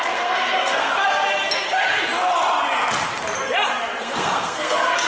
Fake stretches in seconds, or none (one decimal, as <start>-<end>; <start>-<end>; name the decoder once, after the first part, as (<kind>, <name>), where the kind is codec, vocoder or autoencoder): 0.0-0.9 (codec, SNAC); 4.0-5.1